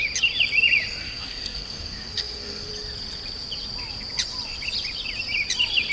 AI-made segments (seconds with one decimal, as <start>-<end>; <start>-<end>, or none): 1.0-2.7